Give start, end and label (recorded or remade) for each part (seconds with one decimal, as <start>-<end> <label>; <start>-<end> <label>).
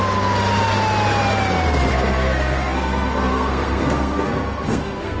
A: 0.0-1.9 recorded; 1.9-5.2 remade